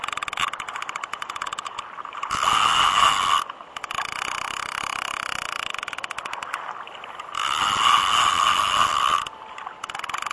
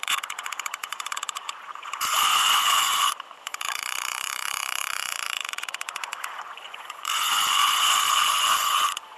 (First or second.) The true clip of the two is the first